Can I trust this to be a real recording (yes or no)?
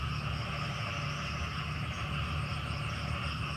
yes